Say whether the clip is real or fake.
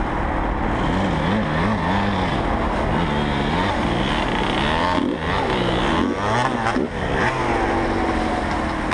real